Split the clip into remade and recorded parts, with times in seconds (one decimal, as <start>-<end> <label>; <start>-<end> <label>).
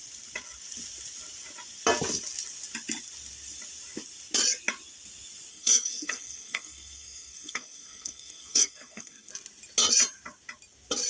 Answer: 0.0-5.5 recorded; 5.5-9.3 remade; 9.3-11.1 recorded